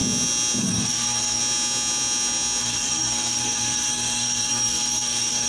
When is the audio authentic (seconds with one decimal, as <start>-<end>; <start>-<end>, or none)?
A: 0.0-0.6; 1.4-2.6